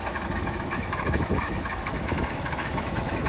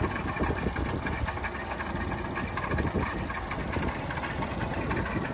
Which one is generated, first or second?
first